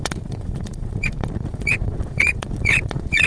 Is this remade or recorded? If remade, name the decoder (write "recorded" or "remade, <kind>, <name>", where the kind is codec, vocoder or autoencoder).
remade, vocoder, Vocos